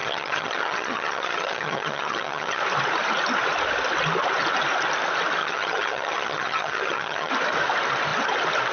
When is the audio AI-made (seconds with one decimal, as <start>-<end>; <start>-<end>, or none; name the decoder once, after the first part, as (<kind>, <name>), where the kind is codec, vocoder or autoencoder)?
0.0-2.6 (vocoder, HiFi-GAN); 5.4-7.3